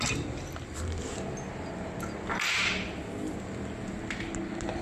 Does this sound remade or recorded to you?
recorded